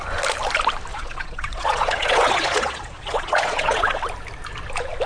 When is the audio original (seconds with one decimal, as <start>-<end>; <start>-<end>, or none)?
0.0-0.9; 4.0-5.1